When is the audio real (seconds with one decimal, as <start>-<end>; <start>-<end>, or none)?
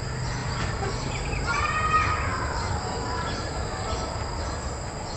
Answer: 0.0-0.4; 1.7-2.3; 3.9-5.2